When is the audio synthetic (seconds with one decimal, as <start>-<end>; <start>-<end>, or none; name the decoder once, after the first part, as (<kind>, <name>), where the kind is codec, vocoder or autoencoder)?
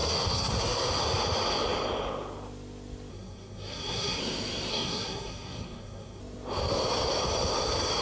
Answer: 0.0-0.9 (codec, SNAC); 3.1-4.2; 4.7-6.2